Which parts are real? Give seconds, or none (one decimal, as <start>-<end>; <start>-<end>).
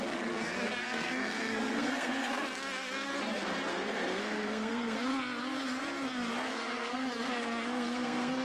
3.1-3.7; 5.1-6.5